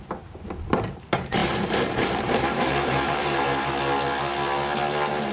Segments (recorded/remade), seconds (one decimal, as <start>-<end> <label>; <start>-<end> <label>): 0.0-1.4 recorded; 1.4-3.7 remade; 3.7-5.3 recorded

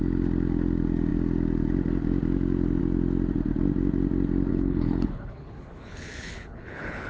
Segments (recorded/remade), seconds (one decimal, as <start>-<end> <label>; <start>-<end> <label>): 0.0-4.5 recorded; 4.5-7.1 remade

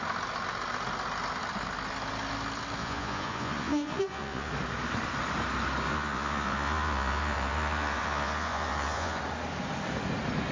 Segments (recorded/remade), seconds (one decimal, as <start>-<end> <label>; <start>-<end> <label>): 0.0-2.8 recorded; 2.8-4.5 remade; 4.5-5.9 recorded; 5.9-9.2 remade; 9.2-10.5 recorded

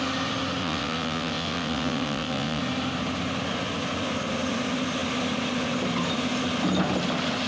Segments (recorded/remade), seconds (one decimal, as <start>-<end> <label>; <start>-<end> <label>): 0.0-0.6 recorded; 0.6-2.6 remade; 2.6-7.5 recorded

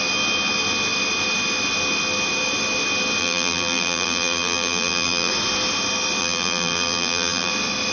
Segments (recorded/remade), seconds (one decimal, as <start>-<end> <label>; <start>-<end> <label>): 0.0-3.2 recorded; 3.2-5.3 remade; 5.3-6.2 recorded; 6.2-7.5 remade; 7.5-7.9 recorded

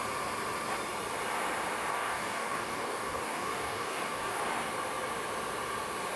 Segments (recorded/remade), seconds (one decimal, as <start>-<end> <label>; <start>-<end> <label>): 0.0-1.9 recorded; 1.9-4.4 remade; 4.4-6.2 recorded